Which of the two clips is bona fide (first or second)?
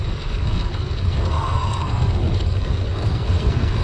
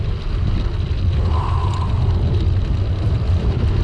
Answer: second